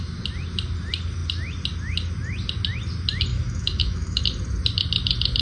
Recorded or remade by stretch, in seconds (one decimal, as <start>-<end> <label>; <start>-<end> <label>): 0.0-3.3 recorded; 3.3-4.2 remade; 4.2-5.4 recorded